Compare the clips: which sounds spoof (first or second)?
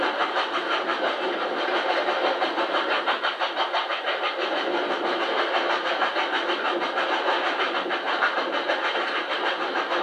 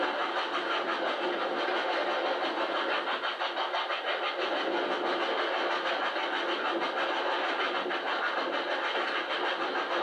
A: first